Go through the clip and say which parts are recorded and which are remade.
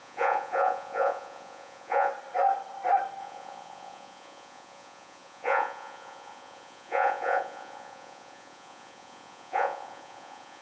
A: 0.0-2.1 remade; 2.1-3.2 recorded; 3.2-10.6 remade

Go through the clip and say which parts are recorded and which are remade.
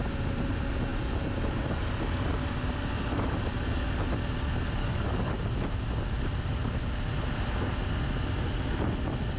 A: 0.0-4.8 recorded; 4.8-5.3 remade; 5.3-9.4 recorded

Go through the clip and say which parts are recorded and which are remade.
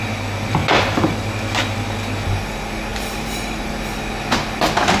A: 0.0-0.6 recorded; 0.6-1.2 remade; 1.2-2.9 recorded; 2.9-3.7 remade; 3.7-5.0 recorded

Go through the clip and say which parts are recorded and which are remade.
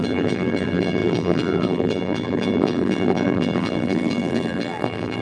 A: 0.0-5.2 remade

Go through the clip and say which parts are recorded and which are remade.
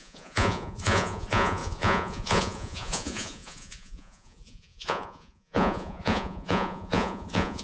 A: 0.0-7.6 remade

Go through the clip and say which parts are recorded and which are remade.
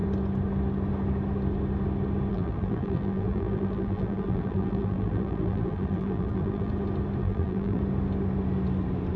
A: 0.0-2.3 recorded; 2.3-6.7 remade; 6.7-7.2 recorded; 7.2-7.8 remade; 7.8-9.2 recorded